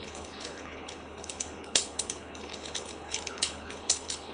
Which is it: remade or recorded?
remade